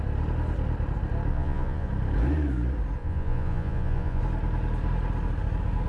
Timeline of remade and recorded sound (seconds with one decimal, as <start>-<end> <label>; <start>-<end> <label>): 0.0-1.3 recorded; 1.3-1.9 remade; 1.9-3.0 recorded; 3.0-4.2 remade; 4.2-5.9 recorded